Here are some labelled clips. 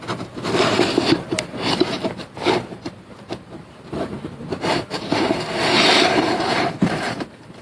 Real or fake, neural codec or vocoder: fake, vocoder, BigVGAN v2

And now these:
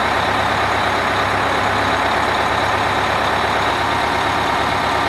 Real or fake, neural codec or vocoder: real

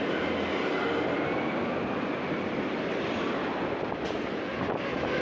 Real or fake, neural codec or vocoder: real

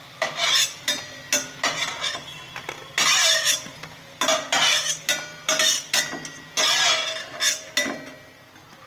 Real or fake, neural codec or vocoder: real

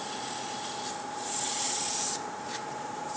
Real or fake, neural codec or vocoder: real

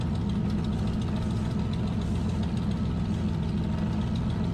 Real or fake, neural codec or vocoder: real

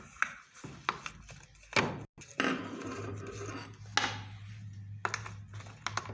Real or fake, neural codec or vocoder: real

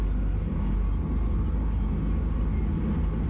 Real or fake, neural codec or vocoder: real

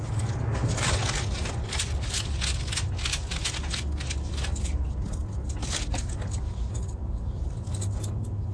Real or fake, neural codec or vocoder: real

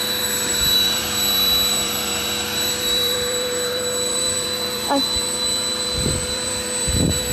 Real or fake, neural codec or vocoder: fake, vocoder, BigVGAN v2